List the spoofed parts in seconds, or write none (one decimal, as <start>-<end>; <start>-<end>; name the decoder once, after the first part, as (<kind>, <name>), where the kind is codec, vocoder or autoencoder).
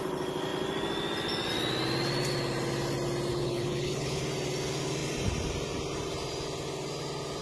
3.3-4.2 (codec, HILCodec)